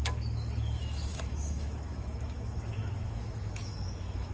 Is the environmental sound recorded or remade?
remade